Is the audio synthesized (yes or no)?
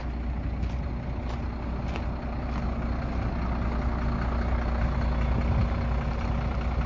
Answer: no